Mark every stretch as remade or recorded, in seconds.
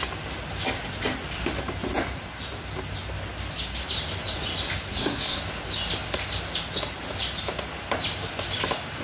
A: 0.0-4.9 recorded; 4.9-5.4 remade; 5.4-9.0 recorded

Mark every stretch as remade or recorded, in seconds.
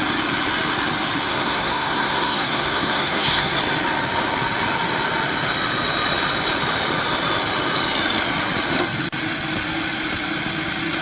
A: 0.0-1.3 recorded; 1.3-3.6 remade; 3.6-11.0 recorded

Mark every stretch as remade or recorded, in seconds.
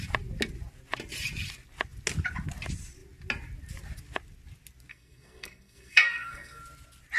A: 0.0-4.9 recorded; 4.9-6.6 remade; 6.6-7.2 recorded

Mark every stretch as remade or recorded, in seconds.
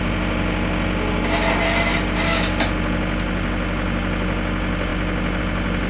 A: 0.0-5.9 recorded